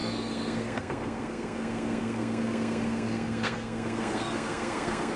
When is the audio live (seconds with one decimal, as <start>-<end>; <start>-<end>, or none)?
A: none